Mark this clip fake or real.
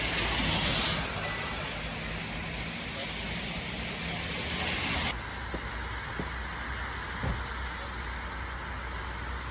real